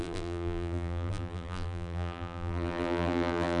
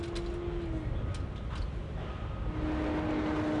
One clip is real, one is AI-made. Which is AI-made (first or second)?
first